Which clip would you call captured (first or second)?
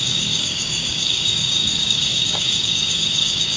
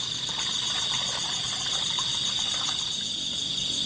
second